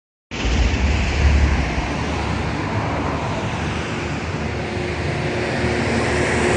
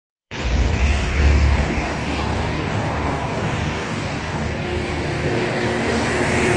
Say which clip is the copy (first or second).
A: second